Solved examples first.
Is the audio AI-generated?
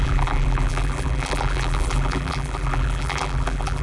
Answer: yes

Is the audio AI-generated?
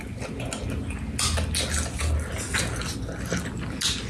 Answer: no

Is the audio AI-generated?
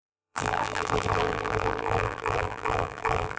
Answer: yes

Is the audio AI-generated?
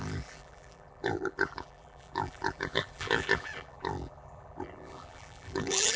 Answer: yes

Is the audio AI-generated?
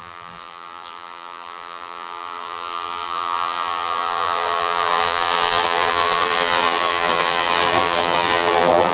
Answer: yes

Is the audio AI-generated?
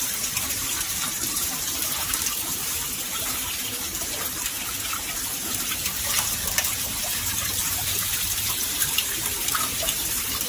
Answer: yes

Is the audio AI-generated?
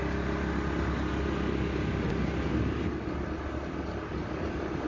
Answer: no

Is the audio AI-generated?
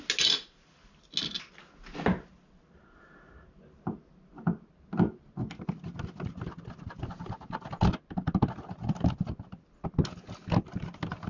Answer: no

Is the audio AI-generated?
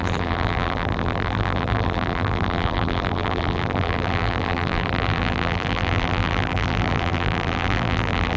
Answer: yes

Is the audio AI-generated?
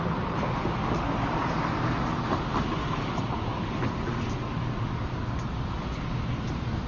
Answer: no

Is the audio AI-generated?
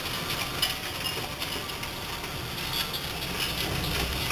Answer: no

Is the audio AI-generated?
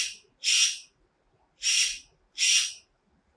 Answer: no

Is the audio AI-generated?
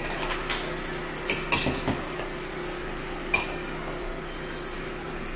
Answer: no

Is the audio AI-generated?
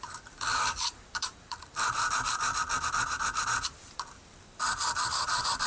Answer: yes